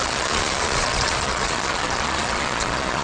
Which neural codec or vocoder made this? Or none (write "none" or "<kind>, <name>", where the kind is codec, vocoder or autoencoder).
vocoder, Vocos